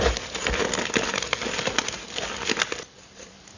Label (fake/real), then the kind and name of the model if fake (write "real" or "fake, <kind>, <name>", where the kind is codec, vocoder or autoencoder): real